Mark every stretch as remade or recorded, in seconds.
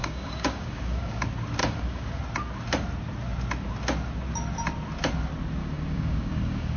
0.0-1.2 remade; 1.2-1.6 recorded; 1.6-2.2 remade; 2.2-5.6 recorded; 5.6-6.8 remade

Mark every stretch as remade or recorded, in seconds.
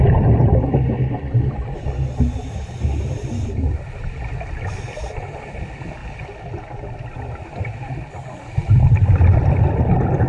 0.0-10.3 recorded